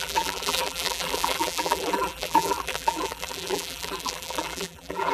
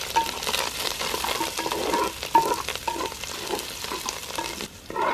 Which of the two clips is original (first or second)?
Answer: second